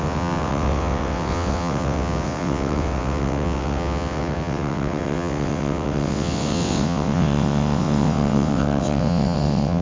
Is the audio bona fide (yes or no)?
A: no